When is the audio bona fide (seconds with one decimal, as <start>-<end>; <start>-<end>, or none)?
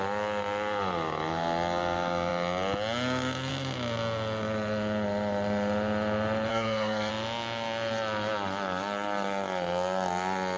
0.0-6.5; 7.1-10.6